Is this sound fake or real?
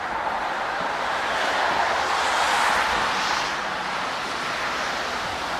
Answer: real